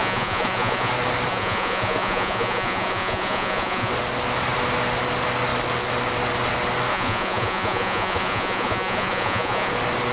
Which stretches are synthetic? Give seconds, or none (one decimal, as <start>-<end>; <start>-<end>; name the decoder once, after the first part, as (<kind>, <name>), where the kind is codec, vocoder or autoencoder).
0.0-0.9 (vocoder, Vocos); 1.3-3.9; 6.9-9.7